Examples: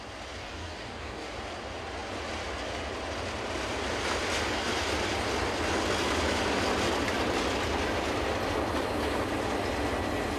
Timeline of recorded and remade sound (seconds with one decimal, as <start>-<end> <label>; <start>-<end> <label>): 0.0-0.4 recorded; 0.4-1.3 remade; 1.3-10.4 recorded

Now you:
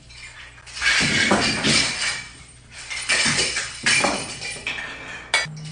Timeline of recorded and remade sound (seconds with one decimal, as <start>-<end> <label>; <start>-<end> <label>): 0.0-2.3 recorded; 2.3-4.8 remade; 4.8-5.7 recorded

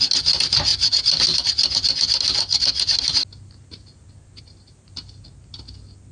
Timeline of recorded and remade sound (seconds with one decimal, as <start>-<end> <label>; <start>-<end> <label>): 0.0-6.1 recorded

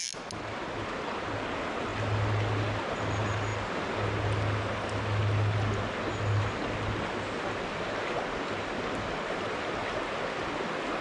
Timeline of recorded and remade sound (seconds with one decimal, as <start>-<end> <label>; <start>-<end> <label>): 0.0-11.0 recorded

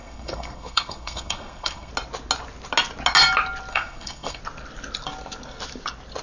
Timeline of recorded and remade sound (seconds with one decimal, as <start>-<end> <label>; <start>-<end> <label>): 0.0-1.9 remade; 1.9-3.7 recorded; 3.7-4.4 remade; 4.4-6.2 recorded

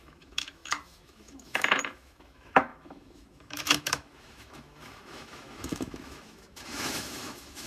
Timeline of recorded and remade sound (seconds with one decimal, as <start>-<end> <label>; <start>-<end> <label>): 0.0-7.7 remade